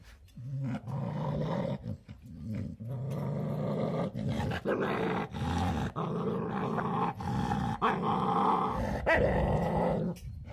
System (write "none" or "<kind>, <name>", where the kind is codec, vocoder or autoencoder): none